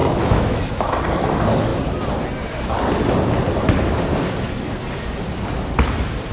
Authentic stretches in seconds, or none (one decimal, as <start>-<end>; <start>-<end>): 1.0-6.3